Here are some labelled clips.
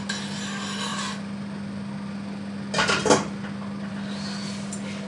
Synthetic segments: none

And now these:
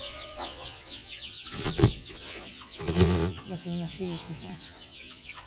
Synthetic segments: 0.0-5.5 (vocoder, Vocos)

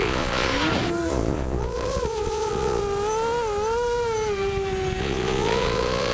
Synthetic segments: 0.0-0.5 (vocoder, Vocos); 1.1-2.8; 5.0-6.1

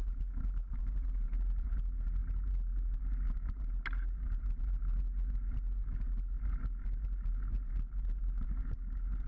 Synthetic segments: none

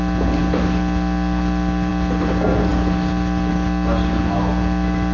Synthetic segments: none

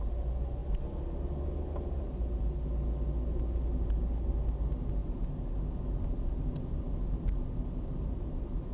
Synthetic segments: none